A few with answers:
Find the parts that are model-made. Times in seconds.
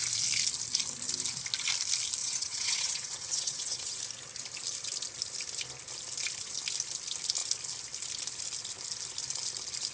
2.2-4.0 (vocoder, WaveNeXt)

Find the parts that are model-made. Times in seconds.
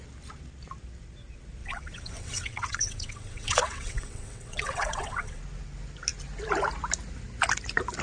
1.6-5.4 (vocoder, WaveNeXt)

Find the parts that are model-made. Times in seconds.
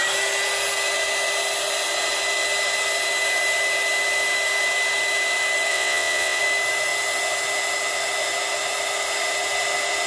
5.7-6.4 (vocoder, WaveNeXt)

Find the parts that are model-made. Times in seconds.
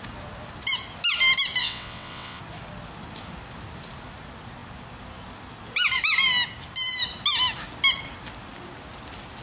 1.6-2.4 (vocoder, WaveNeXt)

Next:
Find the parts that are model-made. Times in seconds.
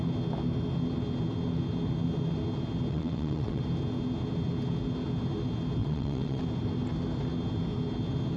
2.9-3.6 (vocoder, WaveNeXt); 5.8-6.4